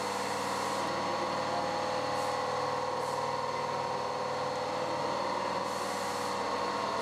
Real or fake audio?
real